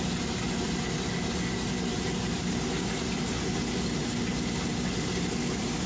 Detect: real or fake real